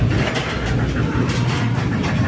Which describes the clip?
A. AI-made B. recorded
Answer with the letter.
B